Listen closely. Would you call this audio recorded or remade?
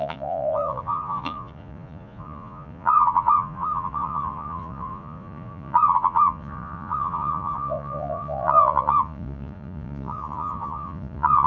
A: remade